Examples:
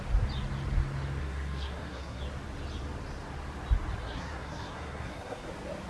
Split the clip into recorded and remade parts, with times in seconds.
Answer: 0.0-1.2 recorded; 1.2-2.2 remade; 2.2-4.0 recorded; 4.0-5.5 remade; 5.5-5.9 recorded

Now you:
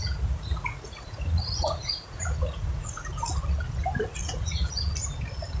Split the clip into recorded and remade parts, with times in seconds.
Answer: 0.0-3.1 remade; 3.1-4.2 recorded; 4.2-4.7 remade; 4.7-5.6 recorded

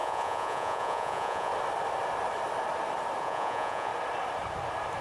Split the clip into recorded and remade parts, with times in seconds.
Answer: 0.0-1.5 remade; 1.5-3.2 recorded; 3.2-3.9 remade; 3.9-5.0 recorded

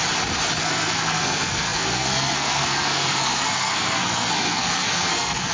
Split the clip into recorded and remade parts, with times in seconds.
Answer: 0.0-0.6 recorded; 0.6-5.5 remade

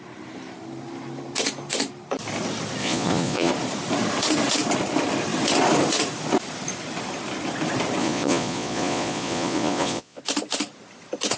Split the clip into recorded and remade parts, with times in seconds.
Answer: 0.0-2.8 recorded; 2.8-3.5 remade; 3.5-8.0 recorded; 8.0-10.2 remade; 10.2-11.4 recorded

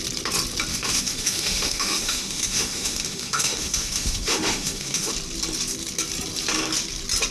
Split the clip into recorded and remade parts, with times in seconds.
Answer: 0.0-0.7 recorded; 0.7-5.1 remade; 5.1-7.3 recorded

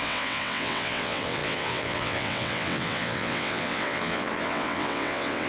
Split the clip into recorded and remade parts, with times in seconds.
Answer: 0.0-5.5 remade

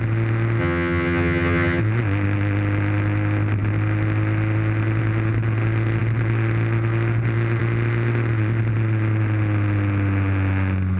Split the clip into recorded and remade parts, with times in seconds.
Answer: 0.0-0.6 recorded; 0.6-1.8 remade; 1.8-11.0 recorded